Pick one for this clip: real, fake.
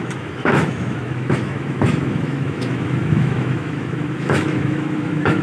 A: fake